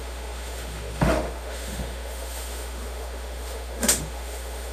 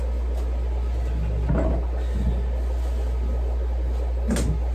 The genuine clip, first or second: second